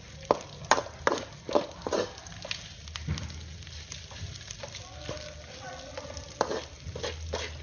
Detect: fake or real real